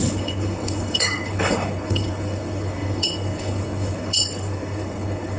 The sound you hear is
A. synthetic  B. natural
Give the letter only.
A